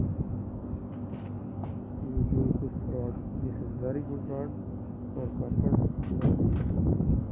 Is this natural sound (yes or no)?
yes